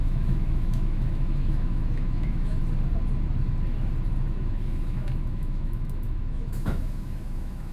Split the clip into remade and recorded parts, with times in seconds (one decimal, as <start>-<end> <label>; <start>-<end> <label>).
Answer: 0.0-2.6 remade; 2.6-4.3 recorded; 4.3-7.7 remade